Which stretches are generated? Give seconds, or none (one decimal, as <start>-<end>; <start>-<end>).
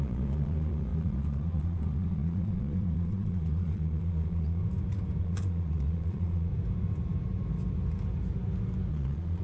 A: 0.0-4.6; 5.2-6.5; 8.9-9.4